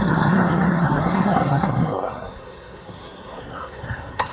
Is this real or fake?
fake